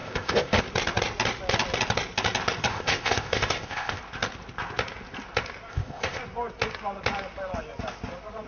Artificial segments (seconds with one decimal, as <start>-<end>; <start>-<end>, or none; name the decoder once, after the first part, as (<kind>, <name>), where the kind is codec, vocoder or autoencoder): 0.0-0.6 (codec, ZipCodec); 2.7-4.0; 5.7-6.2